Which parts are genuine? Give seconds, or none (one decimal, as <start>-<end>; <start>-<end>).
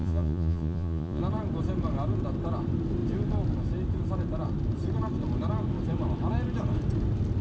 1.2-7.4